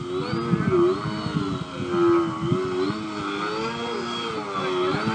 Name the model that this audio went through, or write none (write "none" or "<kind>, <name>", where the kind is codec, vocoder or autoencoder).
none